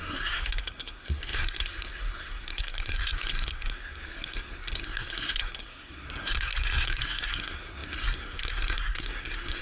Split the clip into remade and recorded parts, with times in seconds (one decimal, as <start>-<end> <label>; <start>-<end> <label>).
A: 0.0-9.6 remade